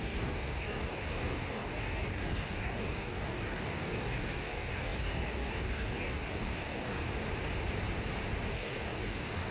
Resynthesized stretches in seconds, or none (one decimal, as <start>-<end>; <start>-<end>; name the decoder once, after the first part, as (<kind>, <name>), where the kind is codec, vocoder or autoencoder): 0.0-7.0 (codec, DAC); 8.5-9.5